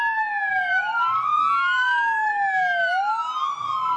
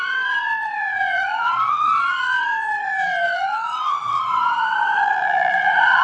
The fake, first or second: second